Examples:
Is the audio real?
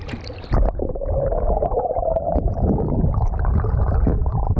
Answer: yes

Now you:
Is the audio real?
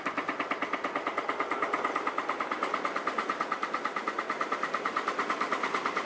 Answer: yes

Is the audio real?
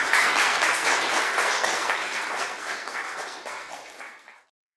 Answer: no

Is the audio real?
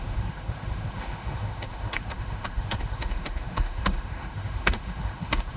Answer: no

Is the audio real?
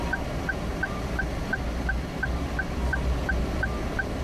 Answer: yes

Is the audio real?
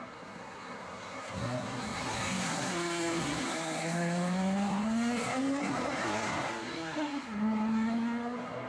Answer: no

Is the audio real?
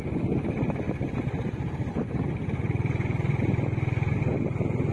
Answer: yes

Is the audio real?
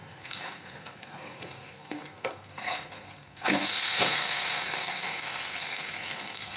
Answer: no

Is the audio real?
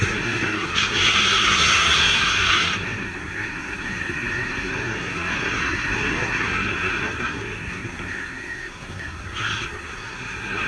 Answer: no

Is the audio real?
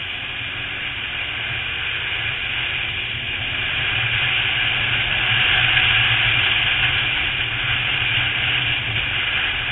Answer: yes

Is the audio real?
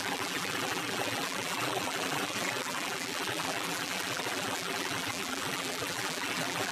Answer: no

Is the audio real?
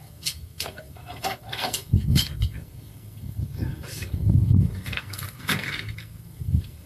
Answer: no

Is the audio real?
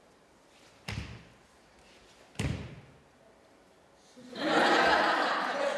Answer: yes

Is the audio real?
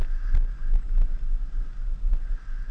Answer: yes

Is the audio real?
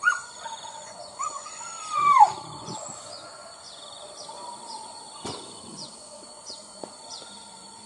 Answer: no